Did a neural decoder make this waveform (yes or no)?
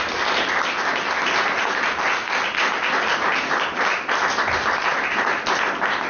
no